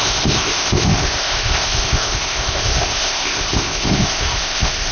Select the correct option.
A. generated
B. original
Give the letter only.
A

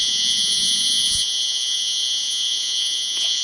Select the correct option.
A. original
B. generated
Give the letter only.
B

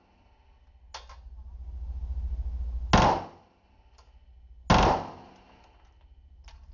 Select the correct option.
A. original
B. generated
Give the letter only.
A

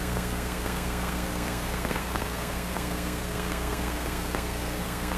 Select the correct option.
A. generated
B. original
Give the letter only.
A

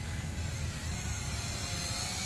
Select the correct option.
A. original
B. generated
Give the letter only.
A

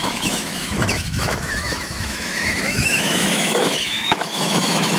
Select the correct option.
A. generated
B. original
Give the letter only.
A